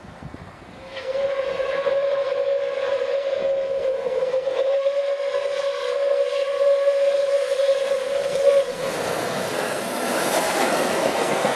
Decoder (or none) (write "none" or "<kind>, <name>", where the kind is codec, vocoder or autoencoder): codec, SNAC